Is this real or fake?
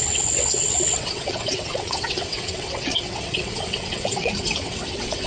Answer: fake